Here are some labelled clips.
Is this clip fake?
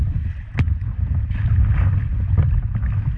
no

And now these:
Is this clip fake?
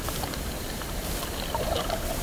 no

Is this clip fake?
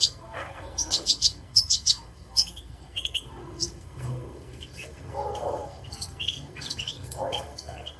yes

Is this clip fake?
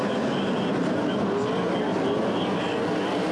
no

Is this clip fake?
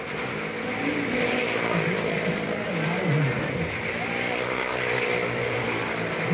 no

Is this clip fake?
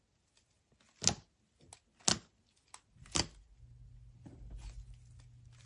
no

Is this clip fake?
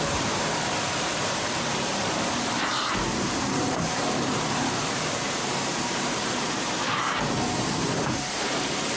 yes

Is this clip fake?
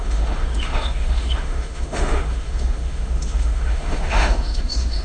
yes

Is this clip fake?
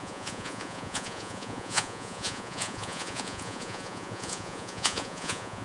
yes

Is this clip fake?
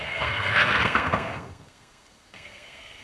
yes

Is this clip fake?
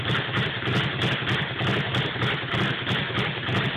no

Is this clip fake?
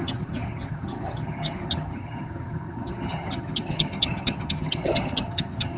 yes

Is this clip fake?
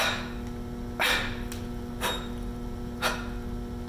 no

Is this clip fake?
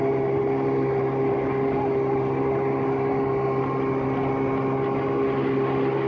no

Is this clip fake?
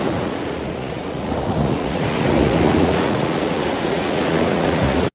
yes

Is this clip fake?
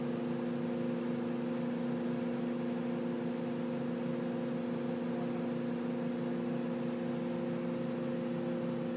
no